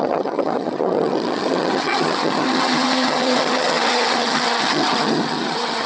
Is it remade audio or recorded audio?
remade